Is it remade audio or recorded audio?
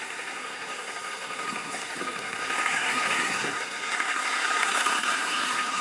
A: remade